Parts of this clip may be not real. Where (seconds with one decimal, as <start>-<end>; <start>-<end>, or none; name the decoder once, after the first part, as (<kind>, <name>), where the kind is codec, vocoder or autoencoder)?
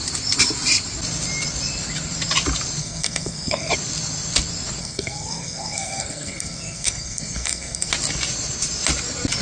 2.8-3.7 (codec, SNAC); 4.8-7.9